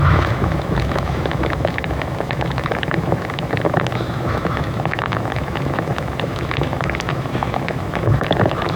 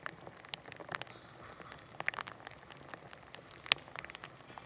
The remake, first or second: first